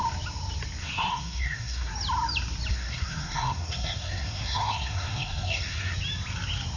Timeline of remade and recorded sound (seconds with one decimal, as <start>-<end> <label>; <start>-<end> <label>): 0.0-0.8 recorded; 0.8-1.9 remade; 1.9-2.7 recorded; 2.7-5.9 remade; 5.9-6.8 recorded